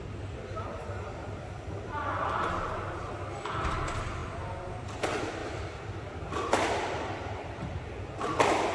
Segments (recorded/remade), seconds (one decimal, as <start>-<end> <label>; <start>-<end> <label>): 0.0-5.4 recorded; 5.4-7.8 remade; 7.8-8.7 recorded